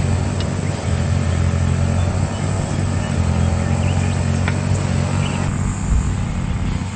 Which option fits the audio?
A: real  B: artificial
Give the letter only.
A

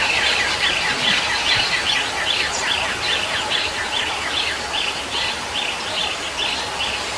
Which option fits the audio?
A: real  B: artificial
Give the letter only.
A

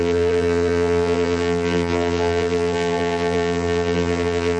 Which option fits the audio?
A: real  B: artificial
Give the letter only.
B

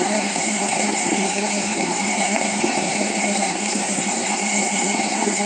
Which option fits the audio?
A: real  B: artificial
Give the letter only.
B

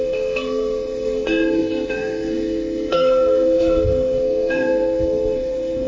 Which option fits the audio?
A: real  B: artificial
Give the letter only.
B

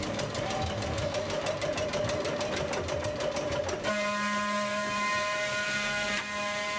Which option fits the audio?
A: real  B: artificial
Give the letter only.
B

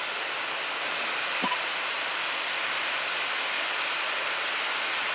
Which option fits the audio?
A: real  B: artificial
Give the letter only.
A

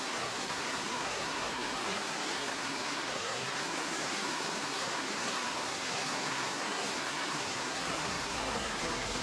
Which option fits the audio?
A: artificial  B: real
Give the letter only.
A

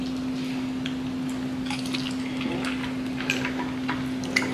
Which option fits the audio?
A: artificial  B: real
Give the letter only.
B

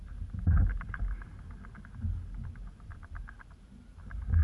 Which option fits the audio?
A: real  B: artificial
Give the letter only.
A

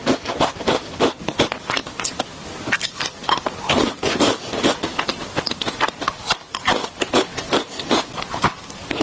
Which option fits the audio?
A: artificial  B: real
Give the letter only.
B